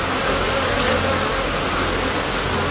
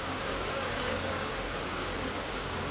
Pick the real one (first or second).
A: first